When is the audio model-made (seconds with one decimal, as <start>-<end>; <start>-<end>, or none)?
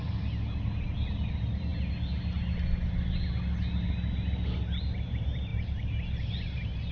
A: none